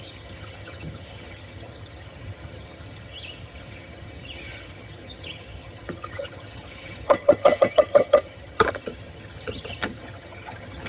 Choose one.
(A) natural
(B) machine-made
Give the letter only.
B